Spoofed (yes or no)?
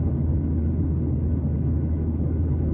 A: yes